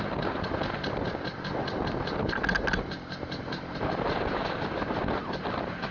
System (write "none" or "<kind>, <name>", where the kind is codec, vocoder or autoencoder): none